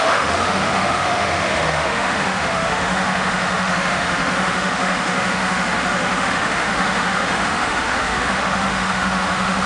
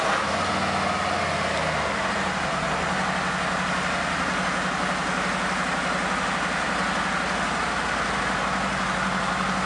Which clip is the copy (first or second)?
first